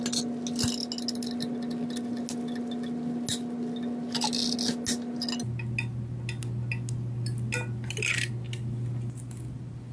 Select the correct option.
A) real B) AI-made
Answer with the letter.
A